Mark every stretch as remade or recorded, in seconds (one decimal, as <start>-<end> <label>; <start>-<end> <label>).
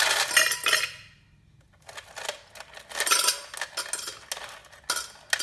0.0-5.4 recorded